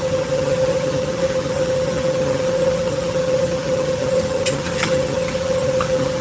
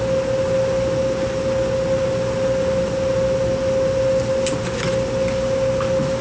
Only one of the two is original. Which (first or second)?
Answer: second